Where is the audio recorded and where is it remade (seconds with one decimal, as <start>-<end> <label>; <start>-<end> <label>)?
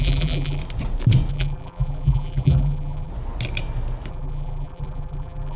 0.0-0.6 remade; 0.6-1.3 recorded; 1.3-3.1 remade; 3.1-4.1 recorded; 4.1-5.6 remade